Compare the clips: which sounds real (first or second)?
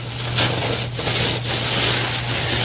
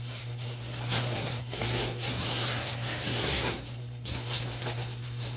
first